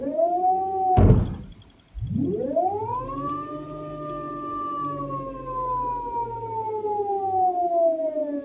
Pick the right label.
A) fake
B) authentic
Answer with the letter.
B